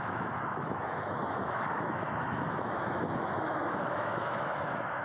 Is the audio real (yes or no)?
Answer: no